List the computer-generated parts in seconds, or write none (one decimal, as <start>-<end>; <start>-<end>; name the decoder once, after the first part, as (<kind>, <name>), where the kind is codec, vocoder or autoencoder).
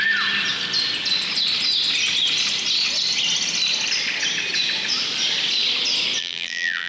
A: 6.2-6.9 (vocoder, BigVGAN v2)